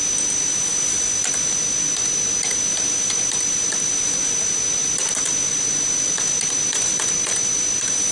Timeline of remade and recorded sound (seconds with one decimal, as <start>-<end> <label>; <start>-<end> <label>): 0.0-8.1 recorded